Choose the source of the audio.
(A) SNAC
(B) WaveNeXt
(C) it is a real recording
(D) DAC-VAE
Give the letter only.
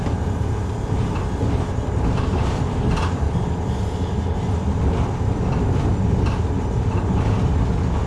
C